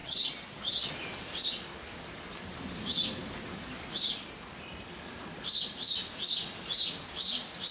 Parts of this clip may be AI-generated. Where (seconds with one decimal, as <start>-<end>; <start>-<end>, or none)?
0.0-0.9